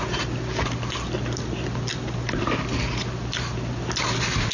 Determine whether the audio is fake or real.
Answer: real